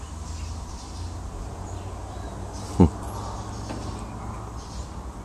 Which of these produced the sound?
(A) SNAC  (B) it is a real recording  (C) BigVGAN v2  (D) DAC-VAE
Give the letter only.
B